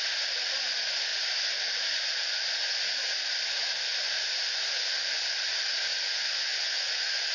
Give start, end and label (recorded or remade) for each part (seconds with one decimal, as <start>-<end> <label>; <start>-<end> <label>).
0.0-4.7 recorded; 4.7-5.2 remade; 5.2-5.9 recorded; 5.9-7.3 remade